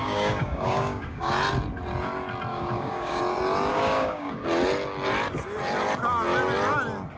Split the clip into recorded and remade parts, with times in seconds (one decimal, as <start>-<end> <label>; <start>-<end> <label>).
0.0-1.3 remade; 1.3-2.5 recorded; 2.5-3.2 remade; 3.2-3.7 recorded; 3.7-4.3 remade; 4.3-7.2 recorded